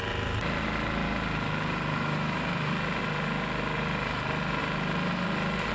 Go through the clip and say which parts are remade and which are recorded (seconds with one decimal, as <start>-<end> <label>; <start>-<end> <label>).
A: 0.0-1.9 recorded; 1.9-2.7 remade; 2.7-5.7 recorded